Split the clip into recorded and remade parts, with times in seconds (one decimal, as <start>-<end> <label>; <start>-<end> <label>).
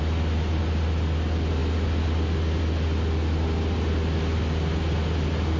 0.0-5.6 recorded